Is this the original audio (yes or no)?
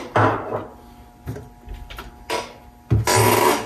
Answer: yes